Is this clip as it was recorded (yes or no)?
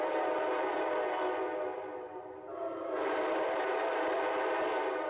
no